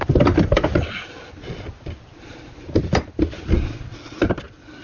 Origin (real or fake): real